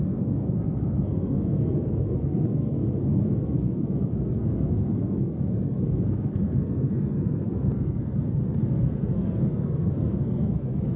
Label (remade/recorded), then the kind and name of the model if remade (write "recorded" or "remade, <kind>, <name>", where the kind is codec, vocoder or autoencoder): remade, codec, SNAC